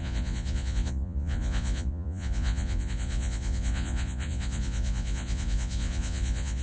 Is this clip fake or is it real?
fake